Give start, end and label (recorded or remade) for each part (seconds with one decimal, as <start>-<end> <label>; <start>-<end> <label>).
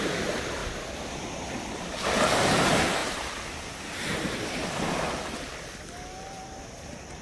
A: 0.0-0.6 recorded; 0.6-1.3 remade; 1.3-3.0 recorded; 3.0-5.8 remade; 5.8-7.2 recorded